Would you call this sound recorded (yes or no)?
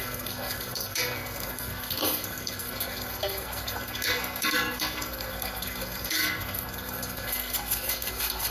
no